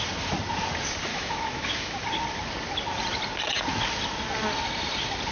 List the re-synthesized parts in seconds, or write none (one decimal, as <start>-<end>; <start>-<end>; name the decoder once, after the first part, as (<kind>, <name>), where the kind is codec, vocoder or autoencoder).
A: 1.1-2.0 (autoencoder, DAC-VAE)